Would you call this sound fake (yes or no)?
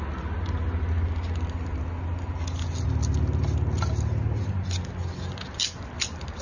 no